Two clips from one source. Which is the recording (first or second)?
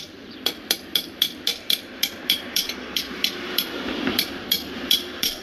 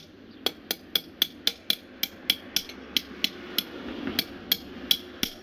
second